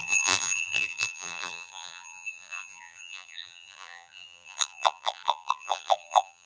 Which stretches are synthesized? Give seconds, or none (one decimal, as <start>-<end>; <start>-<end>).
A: 0.0-6.5